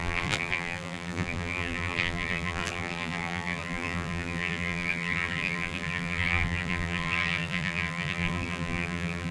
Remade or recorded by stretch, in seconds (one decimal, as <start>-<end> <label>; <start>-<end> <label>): 0.0-9.3 remade